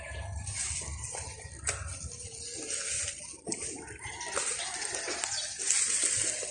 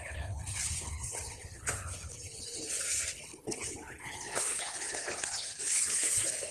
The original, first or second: first